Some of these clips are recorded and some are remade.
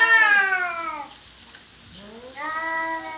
recorded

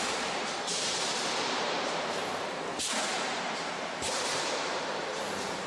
remade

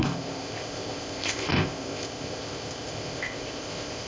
remade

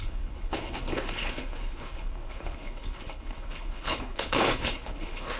remade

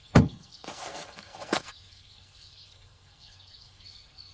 remade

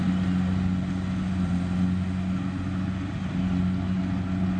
recorded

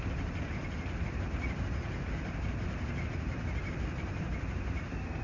recorded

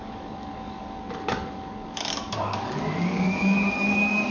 remade